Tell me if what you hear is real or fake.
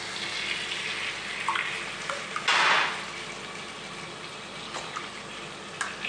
real